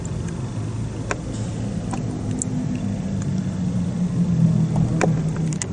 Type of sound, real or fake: real